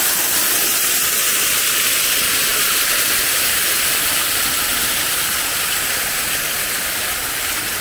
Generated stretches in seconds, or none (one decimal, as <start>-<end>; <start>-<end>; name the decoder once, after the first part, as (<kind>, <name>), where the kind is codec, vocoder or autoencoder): 2.5-7.2 (vocoder, BigVGAN v2)